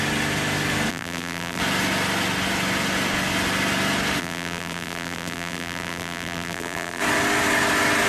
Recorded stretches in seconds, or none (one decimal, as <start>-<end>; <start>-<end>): 0.0-0.9; 1.6-4.2; 7.0-8.1